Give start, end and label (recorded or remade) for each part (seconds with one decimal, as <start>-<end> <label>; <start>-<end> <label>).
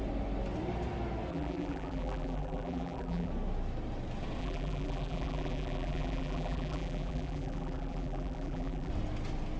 0.0-1.3 recorded; 1.3-3.3 remade; 3.3-4.4 recorded; 4.4-8.9 remade; 8.9-9.6 recorded